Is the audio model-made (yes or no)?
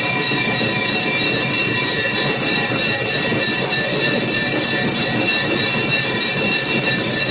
yes